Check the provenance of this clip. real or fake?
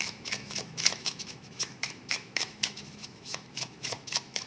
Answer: fake